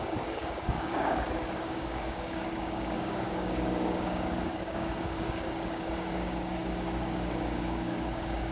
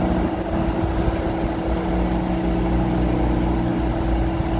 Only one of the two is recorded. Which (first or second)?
second